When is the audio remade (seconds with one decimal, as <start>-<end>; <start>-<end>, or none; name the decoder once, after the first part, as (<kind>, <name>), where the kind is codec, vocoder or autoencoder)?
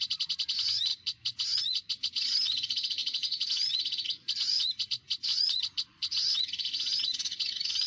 0.0-7.9 (vocoder, Vocos)